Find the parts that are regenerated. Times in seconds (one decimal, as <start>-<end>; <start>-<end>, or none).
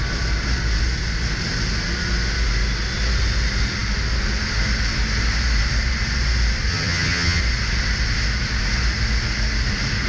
6.7-7.4